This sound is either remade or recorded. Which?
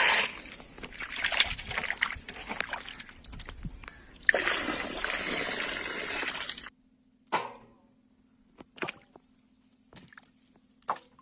recorded